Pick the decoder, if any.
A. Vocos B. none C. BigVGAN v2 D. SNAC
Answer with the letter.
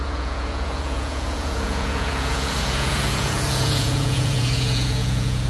A